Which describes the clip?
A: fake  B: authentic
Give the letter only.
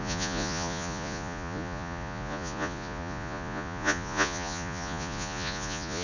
A